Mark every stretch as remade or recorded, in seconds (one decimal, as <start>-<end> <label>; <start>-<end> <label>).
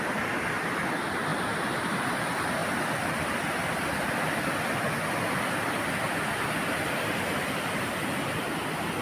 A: 0.0-1.3 recorded; 1.3-2.0 remade; 2.0-2.6 recorded; 2.6-4.6 remade; 4.6-9.0 recorded